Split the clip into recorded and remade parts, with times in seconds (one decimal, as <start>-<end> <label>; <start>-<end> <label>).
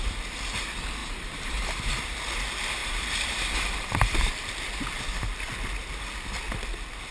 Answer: 0.0-1.0 recorded; 1.0-1.9 remade; 1.9-2.8 recorded; 2.8-4.3 remade; 4.3-7.1 recorded